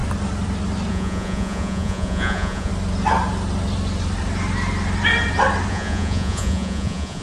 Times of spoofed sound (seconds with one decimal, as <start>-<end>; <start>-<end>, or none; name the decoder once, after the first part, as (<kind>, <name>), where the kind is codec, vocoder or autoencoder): 0.9-2.7 (vocoder, Vocos); 5.7-7.2